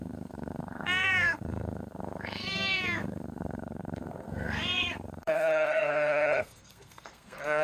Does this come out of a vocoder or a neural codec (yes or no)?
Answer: yes